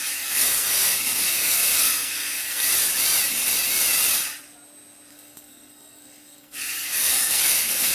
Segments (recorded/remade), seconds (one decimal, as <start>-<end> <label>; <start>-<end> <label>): 0.0-2.7 remade; 2.7-5.1 recorded; 5.1-7.9 remade